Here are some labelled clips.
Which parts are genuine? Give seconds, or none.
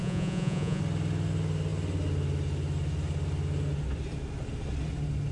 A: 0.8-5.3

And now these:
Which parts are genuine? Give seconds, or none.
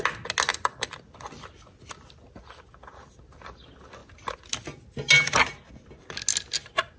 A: 0.0-0.5; 2.6-7.0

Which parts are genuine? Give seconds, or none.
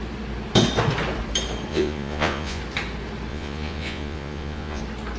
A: 0.0-1.7; 2.6-3.3; 4.8-5.2